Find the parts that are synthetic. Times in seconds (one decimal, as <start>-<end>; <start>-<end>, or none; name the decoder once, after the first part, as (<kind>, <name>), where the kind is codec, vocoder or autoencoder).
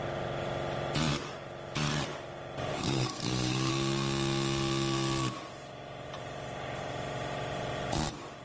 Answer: 2.7-3.7 (codec, SNAC)